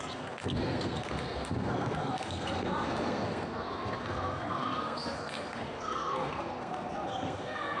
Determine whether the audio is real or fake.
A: fake